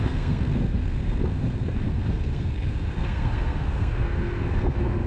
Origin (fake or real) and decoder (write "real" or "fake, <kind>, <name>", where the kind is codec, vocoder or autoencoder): fake, codec, SNAC